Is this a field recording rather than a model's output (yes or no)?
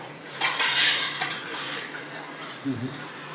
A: no